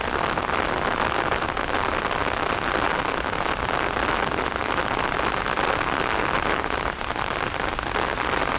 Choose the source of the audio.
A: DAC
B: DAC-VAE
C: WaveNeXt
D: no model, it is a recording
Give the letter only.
D